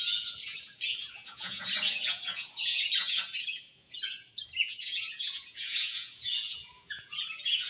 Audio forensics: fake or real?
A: fake